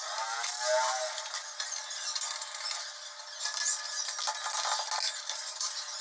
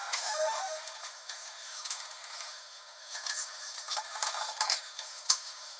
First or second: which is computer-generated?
second